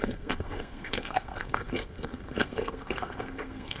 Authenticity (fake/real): fake